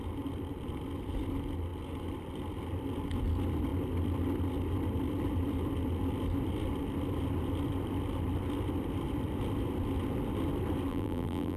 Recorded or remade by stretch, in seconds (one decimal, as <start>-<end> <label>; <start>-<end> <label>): 0.0-10.9 recorded; 10.9-11.6 remade